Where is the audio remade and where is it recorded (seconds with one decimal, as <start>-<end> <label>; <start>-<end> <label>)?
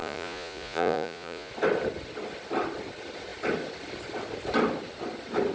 0.0-1.5 remade; 1.5-5.5 recorded